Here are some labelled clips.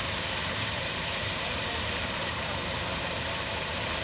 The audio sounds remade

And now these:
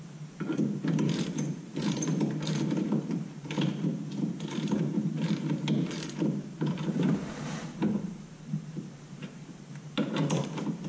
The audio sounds remade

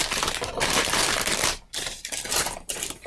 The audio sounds remade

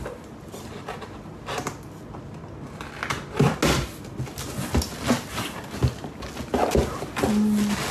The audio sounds recorded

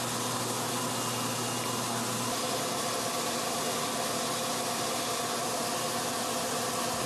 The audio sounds recorded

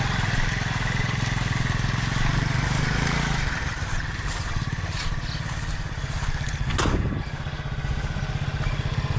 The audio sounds recorded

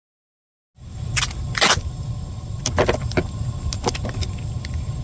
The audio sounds recorded